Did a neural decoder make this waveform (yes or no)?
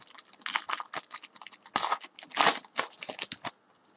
no